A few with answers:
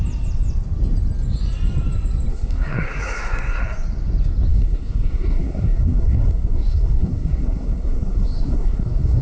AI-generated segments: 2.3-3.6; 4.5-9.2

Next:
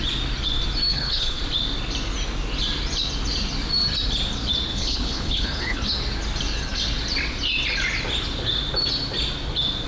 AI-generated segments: 0.9-1.4; 4.7-5.8

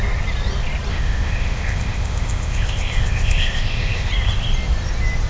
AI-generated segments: 0.9-4.1